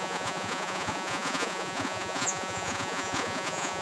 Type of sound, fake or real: fake